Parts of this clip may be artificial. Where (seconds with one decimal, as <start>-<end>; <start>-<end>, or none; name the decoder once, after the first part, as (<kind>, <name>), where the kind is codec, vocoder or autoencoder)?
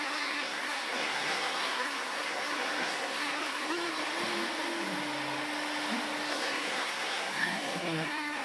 0.0-4.0 (codec, SNAC); 6.3-8.4